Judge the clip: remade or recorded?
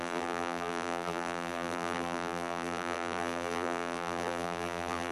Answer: remade